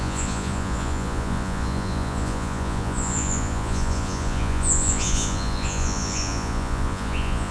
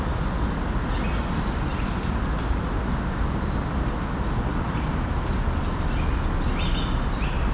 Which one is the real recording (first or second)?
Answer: second